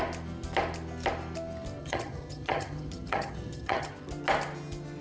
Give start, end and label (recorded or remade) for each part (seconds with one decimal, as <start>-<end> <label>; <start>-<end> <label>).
0.0-1.8 recorded; 1.8-3.9 remade; 3.9-5.0 recorded